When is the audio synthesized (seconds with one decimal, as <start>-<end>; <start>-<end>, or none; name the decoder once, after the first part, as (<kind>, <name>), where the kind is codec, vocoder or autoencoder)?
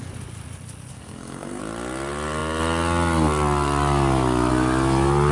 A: 0.9-1.6 (codec, SNAC)